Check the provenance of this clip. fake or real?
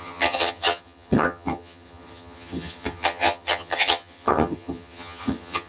fake